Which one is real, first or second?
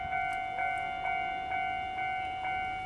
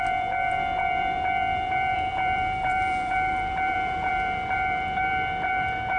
first